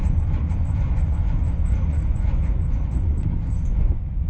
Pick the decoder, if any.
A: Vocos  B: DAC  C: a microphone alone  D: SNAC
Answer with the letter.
A